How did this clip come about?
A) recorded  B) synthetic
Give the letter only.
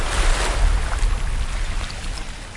A